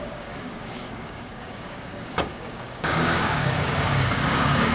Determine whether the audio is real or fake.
fake